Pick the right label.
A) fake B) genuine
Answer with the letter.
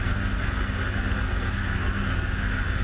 A